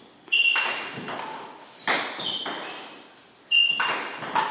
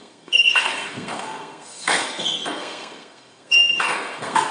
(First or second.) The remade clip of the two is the second